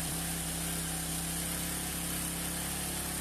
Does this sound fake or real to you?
real